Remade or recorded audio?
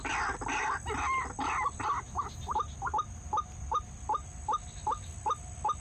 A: recorded